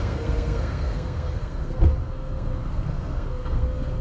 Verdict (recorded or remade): remade